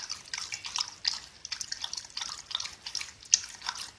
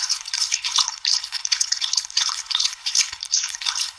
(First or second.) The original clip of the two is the first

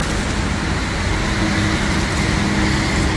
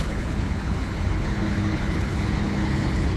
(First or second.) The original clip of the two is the first